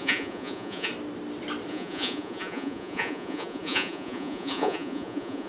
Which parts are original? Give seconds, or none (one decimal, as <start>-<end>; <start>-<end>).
0.9-1.7